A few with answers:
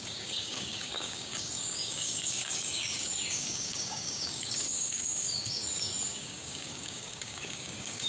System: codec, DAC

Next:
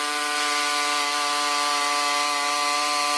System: none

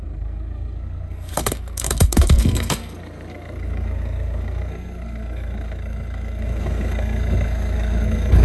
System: codec, SNAC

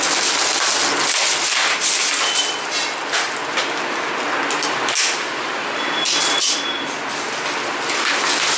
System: none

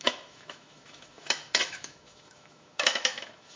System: autoencoder, DAC-VAE